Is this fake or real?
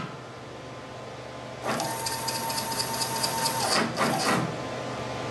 real